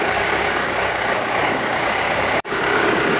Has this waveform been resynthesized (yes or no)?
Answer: yes